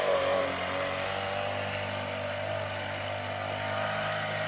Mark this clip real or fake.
real